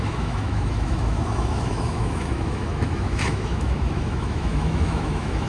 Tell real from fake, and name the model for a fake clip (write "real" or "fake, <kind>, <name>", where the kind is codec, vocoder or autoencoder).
fake, autoencoder, DAC-VAE